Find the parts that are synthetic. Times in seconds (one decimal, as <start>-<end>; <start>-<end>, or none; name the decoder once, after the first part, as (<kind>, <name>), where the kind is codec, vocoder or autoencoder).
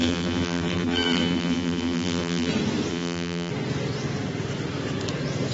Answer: 0.0-2.5 (vocoder, BigVGAN v2); 2.9-3.5